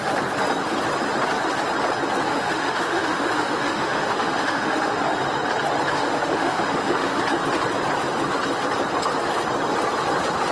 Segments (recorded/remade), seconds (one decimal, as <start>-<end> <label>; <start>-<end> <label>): 0.0-2.3 recorded; 2.3-5.0 remade; 5.0-5.9 recorded; 5.9-7.2 remade; 7.2-10.5 recorded